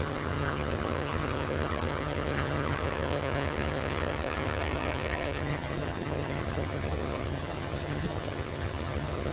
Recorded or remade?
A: remade